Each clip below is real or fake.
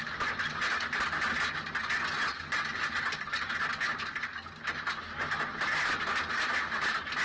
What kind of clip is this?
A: real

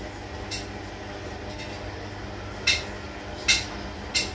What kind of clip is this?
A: real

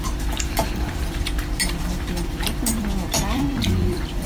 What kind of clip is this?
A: fake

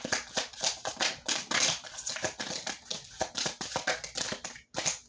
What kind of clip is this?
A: real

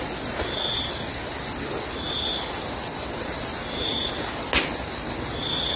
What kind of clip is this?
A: real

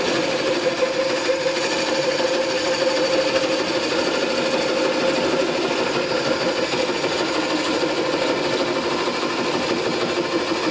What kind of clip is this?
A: real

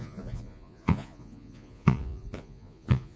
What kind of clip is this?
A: fake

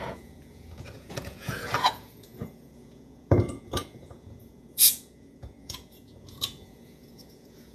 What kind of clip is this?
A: fake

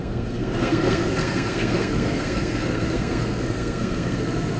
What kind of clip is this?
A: fake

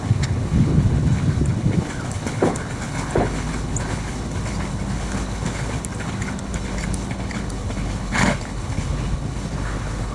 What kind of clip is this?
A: fake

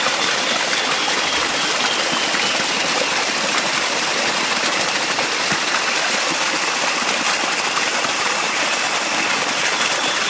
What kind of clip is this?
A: real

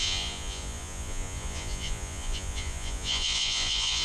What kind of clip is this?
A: fake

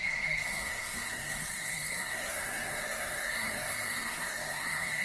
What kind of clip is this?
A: fake